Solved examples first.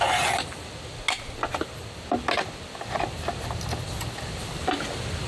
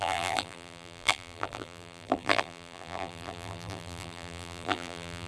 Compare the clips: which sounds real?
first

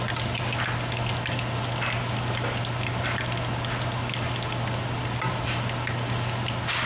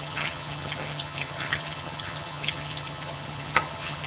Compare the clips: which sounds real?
first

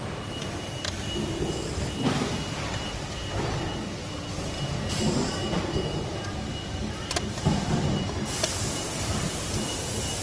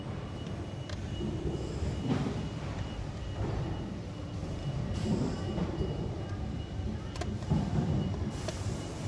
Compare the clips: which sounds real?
first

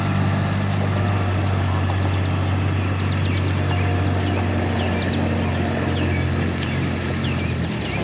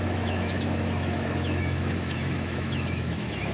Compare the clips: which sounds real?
first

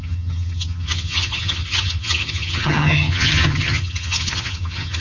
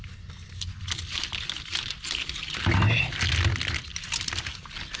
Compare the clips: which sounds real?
second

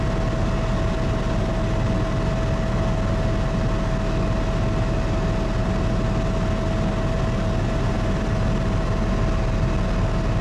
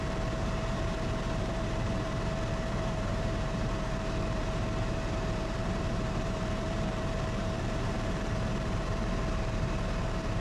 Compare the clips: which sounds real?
first